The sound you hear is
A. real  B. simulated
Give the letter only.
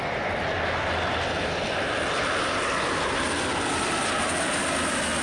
A